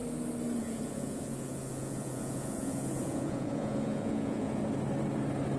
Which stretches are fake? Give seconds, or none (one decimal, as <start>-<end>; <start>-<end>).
0.6-4.6